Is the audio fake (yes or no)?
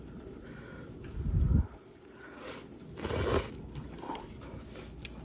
no